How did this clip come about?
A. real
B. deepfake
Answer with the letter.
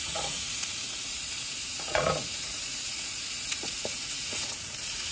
B